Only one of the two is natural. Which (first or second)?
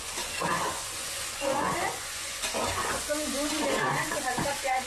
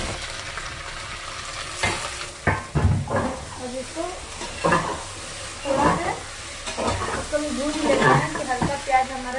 second